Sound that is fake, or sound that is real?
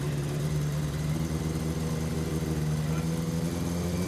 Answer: real